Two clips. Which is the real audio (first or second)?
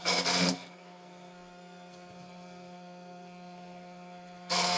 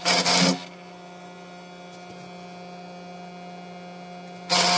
second